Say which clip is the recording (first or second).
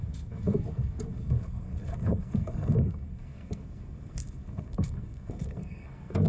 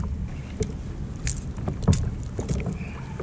second